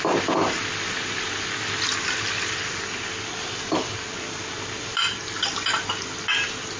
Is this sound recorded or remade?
recorded